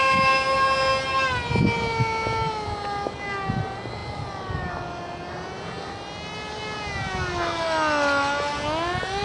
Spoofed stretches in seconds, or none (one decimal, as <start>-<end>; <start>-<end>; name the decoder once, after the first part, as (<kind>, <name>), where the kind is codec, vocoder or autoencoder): none